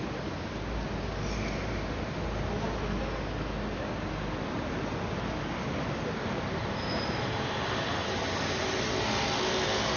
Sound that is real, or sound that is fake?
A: real